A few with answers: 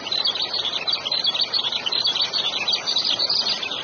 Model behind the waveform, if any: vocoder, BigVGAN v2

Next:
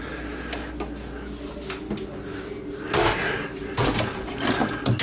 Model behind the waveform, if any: none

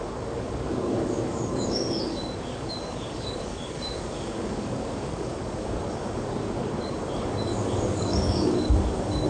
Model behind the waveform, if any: codec, DAC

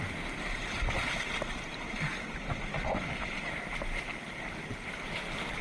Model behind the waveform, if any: none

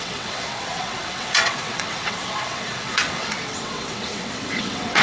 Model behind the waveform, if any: vocoder, WaveNeXt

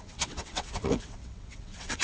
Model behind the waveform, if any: vocoder, WaveNeXt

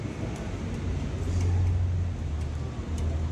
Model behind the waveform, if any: none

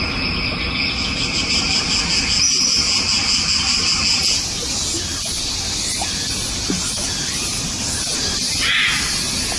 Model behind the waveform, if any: none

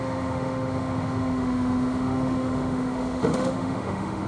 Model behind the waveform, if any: autoencoder, DAC-VAE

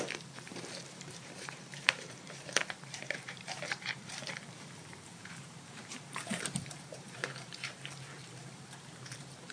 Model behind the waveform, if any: vocoder, BigVGAN v2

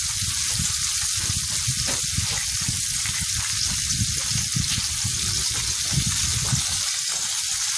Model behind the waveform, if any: none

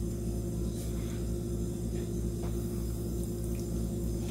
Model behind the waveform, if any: none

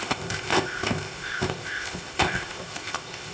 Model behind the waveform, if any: codec, ZipCodec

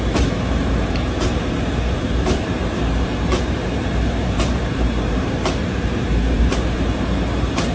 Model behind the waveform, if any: vocoder, BigVGAN v2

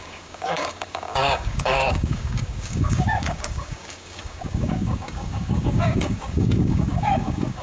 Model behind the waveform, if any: codec, DAC